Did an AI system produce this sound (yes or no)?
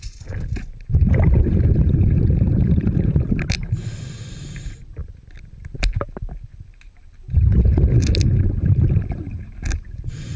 no